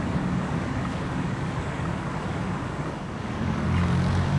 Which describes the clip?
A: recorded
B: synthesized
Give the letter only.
B